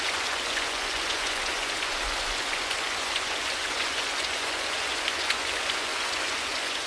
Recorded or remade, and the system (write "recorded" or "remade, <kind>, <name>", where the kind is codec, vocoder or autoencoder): remade, vocoder, Vocos